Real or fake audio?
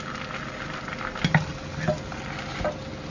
real